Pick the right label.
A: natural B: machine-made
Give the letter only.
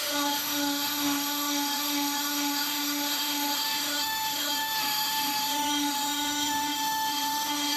B